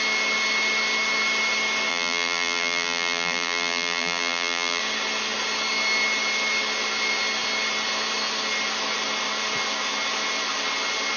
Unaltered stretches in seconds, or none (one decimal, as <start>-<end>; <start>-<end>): 0.0-1.9; 4.8-11.2